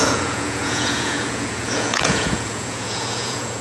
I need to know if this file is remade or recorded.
remade